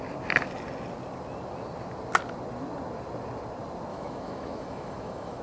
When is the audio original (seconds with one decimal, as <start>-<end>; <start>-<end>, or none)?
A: 0.0-3.9